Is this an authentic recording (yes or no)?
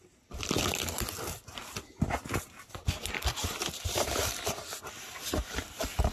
yes